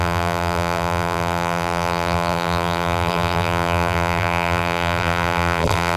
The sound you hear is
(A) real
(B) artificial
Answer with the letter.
B